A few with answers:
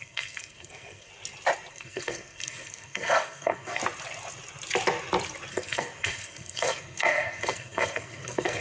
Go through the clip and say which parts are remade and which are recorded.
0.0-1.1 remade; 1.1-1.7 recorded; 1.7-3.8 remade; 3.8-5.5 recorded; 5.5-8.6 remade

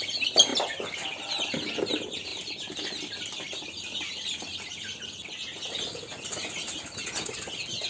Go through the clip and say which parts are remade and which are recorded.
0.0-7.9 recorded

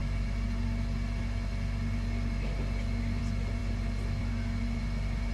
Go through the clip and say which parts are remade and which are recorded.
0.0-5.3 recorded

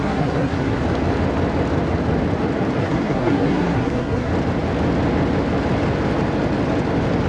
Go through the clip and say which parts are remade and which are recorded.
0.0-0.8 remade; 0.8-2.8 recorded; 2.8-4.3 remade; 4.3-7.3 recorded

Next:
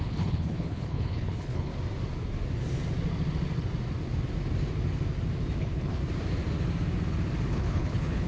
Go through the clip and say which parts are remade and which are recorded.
0.0-1.7 remade; 1.7-5.6 recorded; 5.6-6.0 remade; 6.0-7.5 recorded; 7.5-8.3 remade

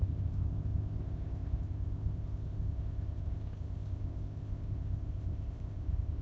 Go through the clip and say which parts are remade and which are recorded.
0.0-6.2 remade

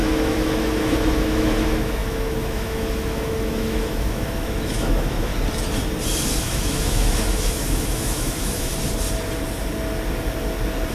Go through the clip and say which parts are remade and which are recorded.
0.0-5.3 remade; 5.3-6.4 recorded; 6.4-8.7 remade; 8.7-10.9 recorded

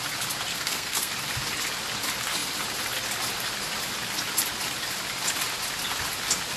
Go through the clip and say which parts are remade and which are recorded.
0.0-0.5 recorded; 0.5-1.1 remade; 1.1-6.6 recorded